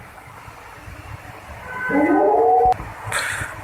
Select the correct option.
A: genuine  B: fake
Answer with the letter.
B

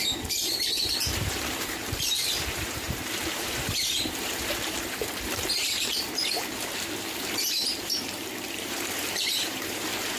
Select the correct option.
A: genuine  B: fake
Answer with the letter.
B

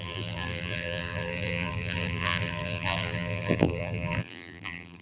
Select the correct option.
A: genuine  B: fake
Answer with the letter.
B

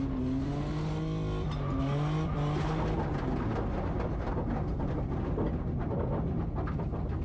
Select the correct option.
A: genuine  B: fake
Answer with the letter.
A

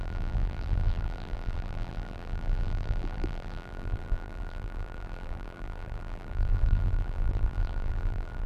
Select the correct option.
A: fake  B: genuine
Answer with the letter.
A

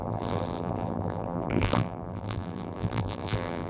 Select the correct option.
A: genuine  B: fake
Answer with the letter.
B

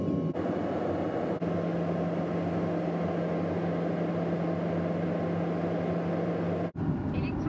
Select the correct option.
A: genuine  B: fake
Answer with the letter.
A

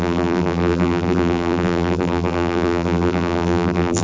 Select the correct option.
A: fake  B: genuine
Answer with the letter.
A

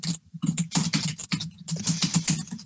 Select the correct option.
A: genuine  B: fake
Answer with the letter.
A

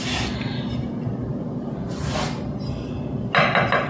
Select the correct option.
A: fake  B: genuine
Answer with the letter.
B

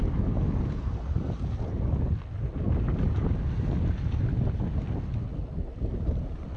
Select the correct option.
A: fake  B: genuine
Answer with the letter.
B